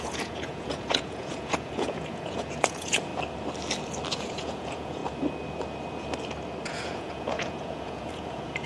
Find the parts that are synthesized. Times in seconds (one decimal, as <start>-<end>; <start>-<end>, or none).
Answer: 0.0-3.1; 4.1-5.0; 6.7-8.7